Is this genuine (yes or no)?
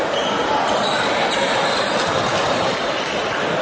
yes